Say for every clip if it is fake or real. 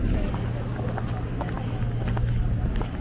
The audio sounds real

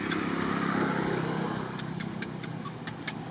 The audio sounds fake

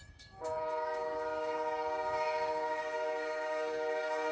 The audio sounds fake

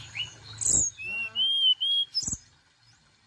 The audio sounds real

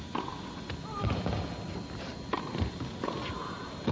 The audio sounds real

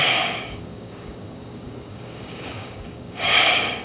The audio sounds fake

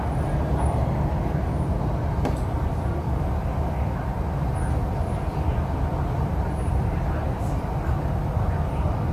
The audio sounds real